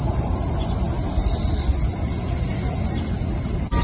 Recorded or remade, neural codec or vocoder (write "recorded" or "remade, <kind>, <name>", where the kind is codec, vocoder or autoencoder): recorded